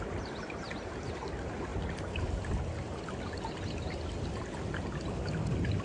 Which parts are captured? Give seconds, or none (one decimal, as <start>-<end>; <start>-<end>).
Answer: 0.0-5.8